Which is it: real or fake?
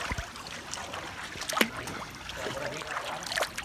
real